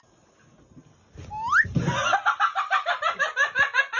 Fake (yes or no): no